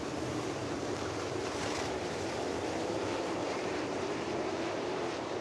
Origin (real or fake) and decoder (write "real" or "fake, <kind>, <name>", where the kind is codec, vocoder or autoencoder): fake, vocoder, BigVGAN v2